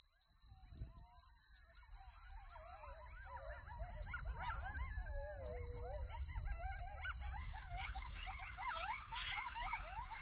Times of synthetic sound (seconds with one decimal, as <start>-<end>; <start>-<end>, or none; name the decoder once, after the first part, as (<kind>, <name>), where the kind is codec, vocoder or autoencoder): 7.4-10.2 (autoencoder, DAC-VAE)